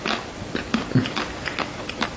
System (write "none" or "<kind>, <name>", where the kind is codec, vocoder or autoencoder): none